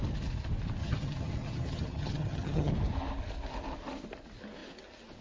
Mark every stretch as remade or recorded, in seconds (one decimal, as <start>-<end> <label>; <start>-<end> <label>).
0.0-0.8 recorded; 0.8-2.7 remade; 2.7-5.2 recorded

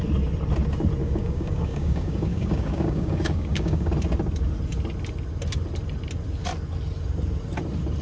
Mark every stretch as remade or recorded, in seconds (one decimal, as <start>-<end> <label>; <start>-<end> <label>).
0.0-1.0 recorded; 1.0-3.9 remade; 3.9-8.0 recorded